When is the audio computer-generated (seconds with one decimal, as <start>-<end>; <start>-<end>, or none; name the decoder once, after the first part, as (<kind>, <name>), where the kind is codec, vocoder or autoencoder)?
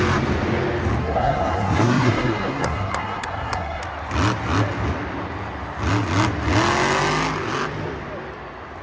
1.0-3.8 (codec, SNAC)